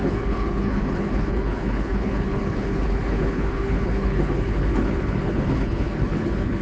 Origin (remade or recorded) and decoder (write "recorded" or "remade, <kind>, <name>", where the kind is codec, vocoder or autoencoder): remade, codec, HILCodec